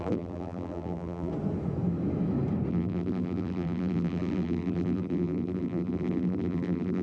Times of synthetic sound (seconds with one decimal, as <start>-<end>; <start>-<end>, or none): 0.0-1.3; 2.7-7.0